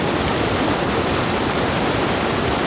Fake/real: real